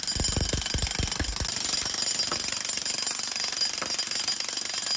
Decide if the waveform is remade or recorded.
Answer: recorded